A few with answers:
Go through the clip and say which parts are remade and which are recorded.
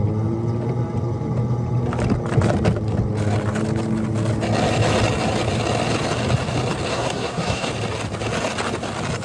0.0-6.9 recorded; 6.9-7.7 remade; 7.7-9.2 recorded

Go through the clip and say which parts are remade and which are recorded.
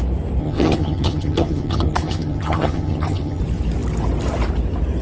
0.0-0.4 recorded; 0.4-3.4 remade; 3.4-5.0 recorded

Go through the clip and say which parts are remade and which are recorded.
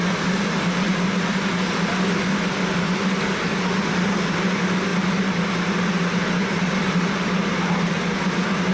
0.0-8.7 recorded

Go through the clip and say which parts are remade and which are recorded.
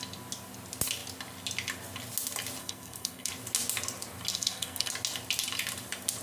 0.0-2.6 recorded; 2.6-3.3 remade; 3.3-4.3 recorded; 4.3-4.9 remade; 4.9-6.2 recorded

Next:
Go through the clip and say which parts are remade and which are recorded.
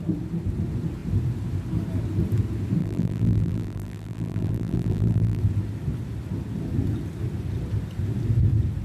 0.0-2.8 recorded; 2.8-5.4 remade; 5.4-8.8 recorded